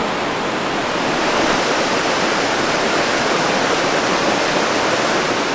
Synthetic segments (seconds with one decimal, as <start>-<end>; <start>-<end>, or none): none